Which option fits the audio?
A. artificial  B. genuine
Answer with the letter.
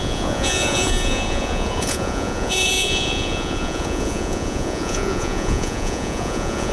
A